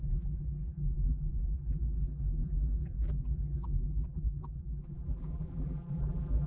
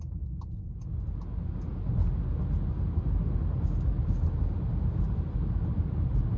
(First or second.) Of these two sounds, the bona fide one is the second